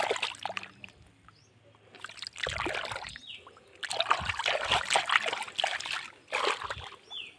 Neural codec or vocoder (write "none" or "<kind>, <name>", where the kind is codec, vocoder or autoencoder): none